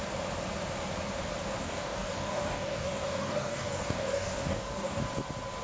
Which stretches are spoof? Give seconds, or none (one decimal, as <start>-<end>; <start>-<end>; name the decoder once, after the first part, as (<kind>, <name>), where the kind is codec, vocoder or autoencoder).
1.6-5.0 (codec, DAC)